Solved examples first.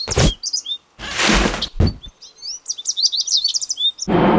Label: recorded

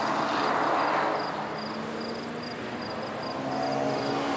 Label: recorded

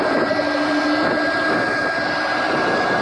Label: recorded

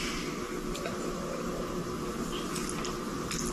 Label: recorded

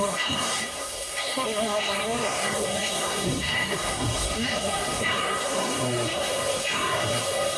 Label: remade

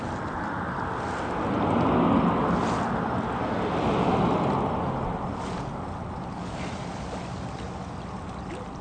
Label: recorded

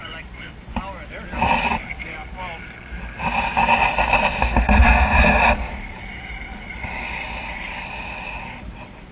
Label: recorded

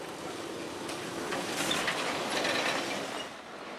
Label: recorded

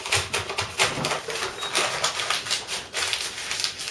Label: recorded